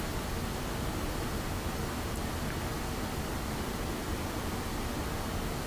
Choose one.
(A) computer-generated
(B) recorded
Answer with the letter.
B